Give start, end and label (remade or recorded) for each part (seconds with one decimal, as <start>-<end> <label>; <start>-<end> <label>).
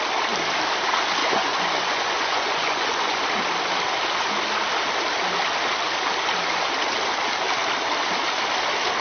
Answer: 0.0-1.2 recorded; 1.2-3.2 remade; 3.2-9.0 recorded